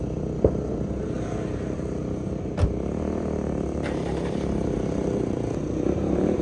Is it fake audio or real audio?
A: fake